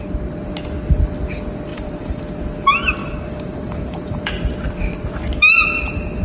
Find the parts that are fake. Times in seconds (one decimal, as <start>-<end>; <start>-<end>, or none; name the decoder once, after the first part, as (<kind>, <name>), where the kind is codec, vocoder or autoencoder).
1.7-2.2 (vocoder, BigVGAN v2); 3.0-4.2